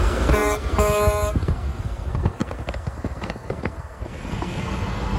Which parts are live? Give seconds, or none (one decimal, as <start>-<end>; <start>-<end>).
none